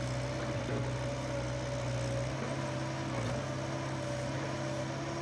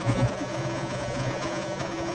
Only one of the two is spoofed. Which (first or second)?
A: second